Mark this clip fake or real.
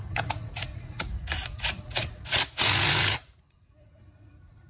fake